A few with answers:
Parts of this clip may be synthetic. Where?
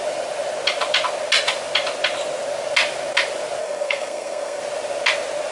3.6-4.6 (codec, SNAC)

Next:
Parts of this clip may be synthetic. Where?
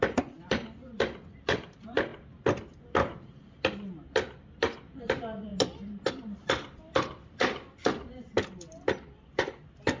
0.0-2.1 (vocoder, BigVGAN v2); 4.6-5.5; 6.1-10.0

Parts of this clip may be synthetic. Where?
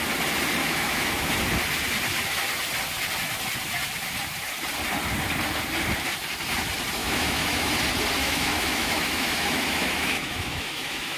0.6-1.3 (autoencoder, DAC-VAE); 7.0-7.7; 8.2-11.2